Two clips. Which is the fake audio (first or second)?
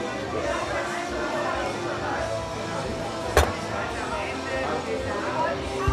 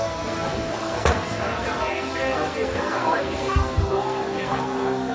second